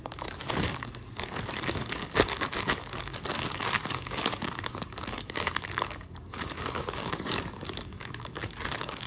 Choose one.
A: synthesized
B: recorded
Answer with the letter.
A